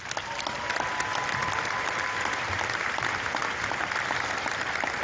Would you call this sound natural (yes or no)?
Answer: yes